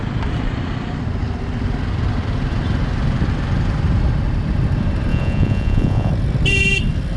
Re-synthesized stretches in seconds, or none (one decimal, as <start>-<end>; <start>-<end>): 5.1-6.1